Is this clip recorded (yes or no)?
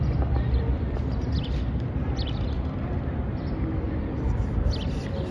yes